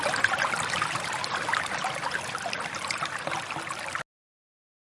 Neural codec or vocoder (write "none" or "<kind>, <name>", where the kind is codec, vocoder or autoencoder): none